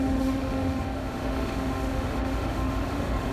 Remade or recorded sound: remade